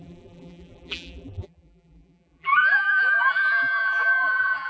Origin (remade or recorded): remade